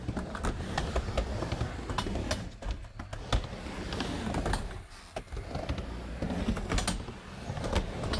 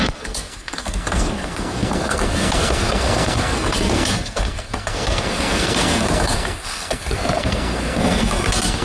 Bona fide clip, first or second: first